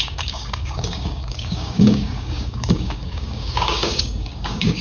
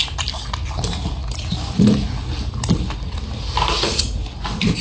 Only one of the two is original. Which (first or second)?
second